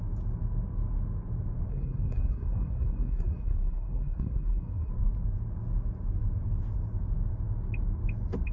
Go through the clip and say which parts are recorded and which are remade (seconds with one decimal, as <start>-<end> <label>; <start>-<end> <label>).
0.0-1.7 recorded; 1.7-4.9 remade; 4.9-8.5 recorded